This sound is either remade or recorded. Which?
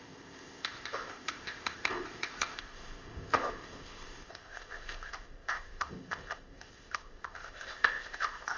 remade